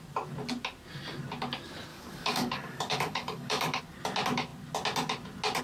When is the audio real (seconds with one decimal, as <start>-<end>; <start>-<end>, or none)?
0.0-1.9; 3.8-5.6